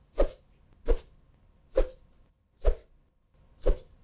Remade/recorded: recorded